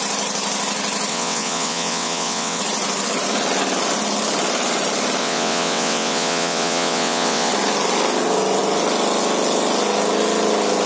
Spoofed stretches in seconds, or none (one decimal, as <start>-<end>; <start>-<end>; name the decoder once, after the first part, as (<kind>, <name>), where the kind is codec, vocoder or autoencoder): 1.1-2.6 (vocoder, WaveNeXt); 5.2-7.5